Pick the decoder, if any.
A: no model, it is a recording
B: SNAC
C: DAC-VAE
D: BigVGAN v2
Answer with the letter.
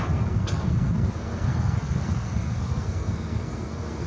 B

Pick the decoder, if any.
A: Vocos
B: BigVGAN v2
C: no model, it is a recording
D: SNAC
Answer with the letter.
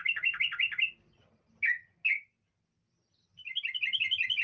C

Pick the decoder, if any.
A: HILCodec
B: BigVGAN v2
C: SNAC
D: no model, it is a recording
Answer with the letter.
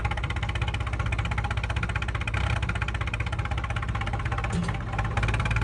D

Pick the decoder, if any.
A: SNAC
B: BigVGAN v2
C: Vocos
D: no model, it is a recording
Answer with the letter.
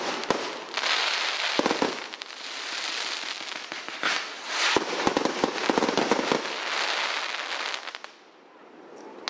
D